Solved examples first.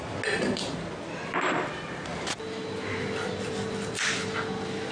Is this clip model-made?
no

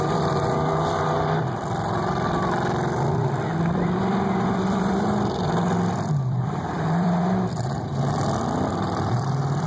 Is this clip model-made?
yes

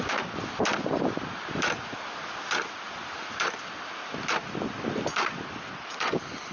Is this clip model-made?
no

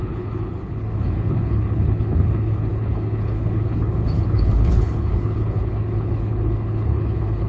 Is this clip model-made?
yes